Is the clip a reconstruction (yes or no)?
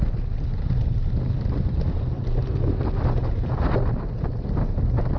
no